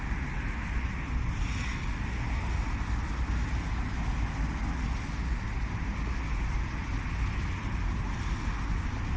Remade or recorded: recorded